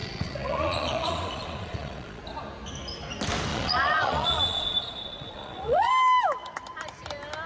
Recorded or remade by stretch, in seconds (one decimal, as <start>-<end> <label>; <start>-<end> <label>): 0.0-2.2 remade; 2.2-3.5 recorded; 3.5-5.9 remade; 5.9-7.5 recorded